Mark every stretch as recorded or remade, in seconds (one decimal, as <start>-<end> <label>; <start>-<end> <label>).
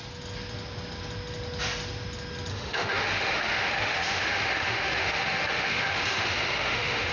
0.0-2.5 recorded; 2.5-7.1 remade